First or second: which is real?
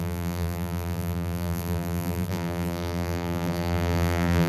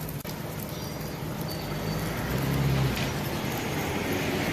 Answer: second